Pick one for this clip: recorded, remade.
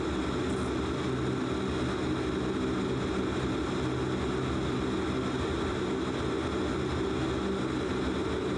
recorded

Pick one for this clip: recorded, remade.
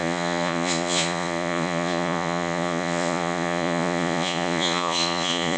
remade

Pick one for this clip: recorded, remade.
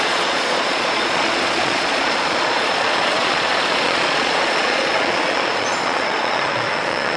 remade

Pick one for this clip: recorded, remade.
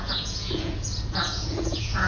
remade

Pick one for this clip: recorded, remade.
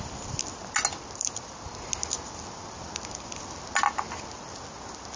recorded